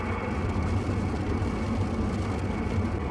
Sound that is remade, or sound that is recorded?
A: recorded